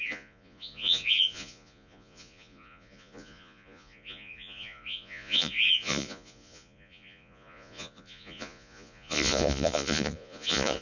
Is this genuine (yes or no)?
no